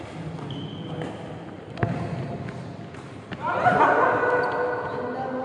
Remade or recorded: recorded